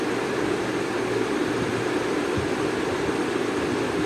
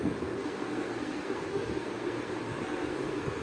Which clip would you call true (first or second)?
first